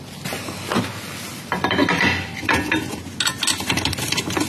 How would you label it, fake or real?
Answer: real